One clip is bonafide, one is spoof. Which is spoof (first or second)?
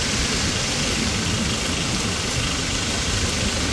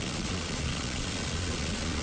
second